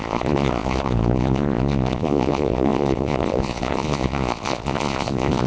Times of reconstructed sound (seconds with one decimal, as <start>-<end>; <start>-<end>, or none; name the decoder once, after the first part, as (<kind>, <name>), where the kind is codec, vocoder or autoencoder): 0.0-5.5 (vocoder, Vocos)